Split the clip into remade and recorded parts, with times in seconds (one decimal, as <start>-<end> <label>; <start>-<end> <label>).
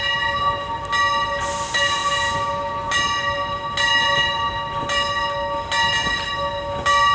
0.0-7.1 recorded